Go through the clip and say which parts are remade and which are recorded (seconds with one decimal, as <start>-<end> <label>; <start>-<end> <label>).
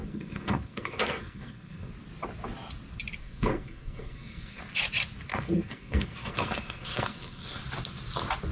0.0-1.9 remade; 1.9-3.2 recorded; 3.2-4.6 remade; 4.6-5.3 recorded; 5.3-7.6 remade; 7.6-8.5 recorded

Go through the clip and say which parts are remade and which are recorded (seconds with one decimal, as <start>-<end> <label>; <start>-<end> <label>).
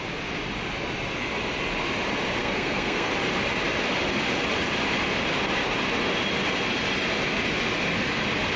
0.0-2.4 recorded; 2.4-3.1 remade; 3.1-8.6 recorded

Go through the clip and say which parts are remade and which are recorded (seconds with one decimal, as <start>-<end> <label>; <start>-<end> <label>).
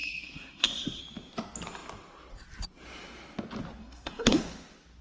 0.0-1.0 remade; 1.0-3.8 recorded; 3.8-4.4 remade; 4.4-5.0 recorded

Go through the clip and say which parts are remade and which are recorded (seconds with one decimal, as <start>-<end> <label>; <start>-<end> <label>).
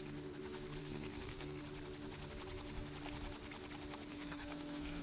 0.0-0.8 recorded; 0.8-1.6 remade; 1.6-4.1 recorded; 4.1-5.0 remade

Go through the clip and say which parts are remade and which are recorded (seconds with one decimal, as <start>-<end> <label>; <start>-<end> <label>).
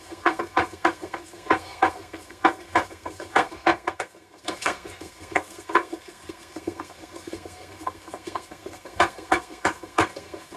0.0-10.6 remade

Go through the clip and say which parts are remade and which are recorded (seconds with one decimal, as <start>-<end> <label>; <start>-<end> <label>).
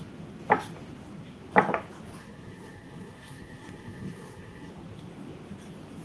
0.0-2.2 recorded; 2.2-4.7 remade; 4.7-6.0 recorded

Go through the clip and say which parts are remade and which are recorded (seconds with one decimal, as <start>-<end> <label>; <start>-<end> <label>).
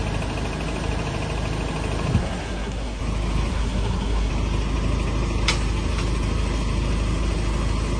0.0-2.2 recorded; 2.2-3.0 remade; 3.0-3.5 recorded; 3.5-4.3 remade; 4.3-8.0 recorded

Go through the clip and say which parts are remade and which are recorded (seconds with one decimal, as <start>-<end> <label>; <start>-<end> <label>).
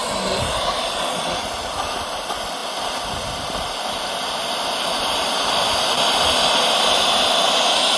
0.0-8.0 recorded